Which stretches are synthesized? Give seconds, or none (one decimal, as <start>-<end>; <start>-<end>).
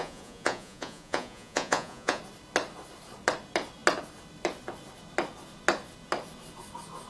0.0-2.2